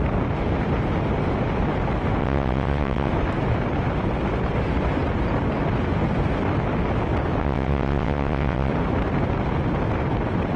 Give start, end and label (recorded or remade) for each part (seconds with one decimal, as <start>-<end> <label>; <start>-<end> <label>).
0.0-2.2 recorded; 2.2-3.1 remade; 3.1-7.4 recorded; 7.4-8.7 remade; 8.7-10.6 recorded

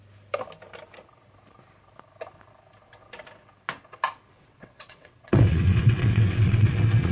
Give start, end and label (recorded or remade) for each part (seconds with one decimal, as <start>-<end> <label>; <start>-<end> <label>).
0.0-4.3 recorded; 4.3-7.1 remade

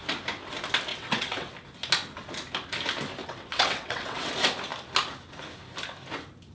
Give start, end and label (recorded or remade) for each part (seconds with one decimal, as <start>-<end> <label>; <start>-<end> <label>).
0.0-0.9 recorded; 0.9-1.5 remade; 1.5-3.2 recorded; 3.2-4.3 remade; 4.3-6.5 recorded

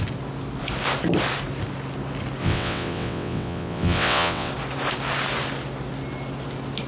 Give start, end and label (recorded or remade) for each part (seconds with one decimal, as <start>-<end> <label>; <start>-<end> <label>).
0.0-2.4 recorded; 2.4-4.5 remade; 4.5-6.9 recorded

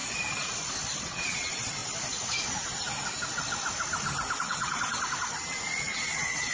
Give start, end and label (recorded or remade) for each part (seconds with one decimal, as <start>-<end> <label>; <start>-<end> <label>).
0.0-1.0 recorded; 1.0-1.8 remade; 1.8-4.4 recorded; 4.4-5.0 remade; 5.0-5.8 recorded; 5.8-6.5 remade

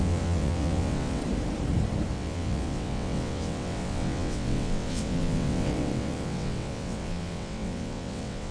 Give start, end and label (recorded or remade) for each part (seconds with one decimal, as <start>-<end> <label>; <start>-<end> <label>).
0.0-1.2 remade; 1.2-2.1 recorded; 2.1-8.5 remade

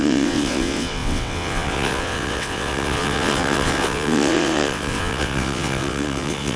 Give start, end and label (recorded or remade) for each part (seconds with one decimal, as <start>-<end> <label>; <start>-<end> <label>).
0.0-6.6 remade